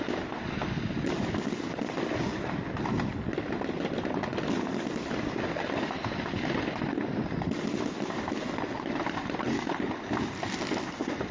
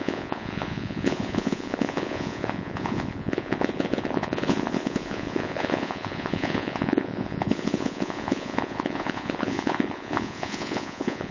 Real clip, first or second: first